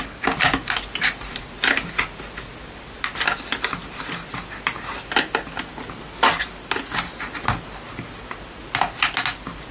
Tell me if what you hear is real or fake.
real